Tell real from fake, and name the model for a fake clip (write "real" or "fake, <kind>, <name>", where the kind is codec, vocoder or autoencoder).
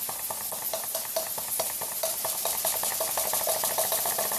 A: real